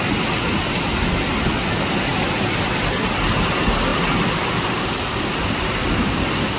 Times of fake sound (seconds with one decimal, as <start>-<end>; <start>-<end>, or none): 3.9-5.4